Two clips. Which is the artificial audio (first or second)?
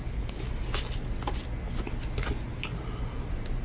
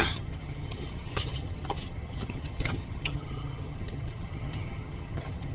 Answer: second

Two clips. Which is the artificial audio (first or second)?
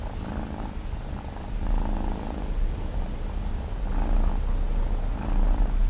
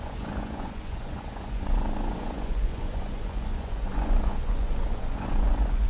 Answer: second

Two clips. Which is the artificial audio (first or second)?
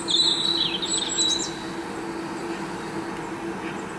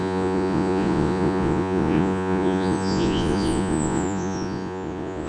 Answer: second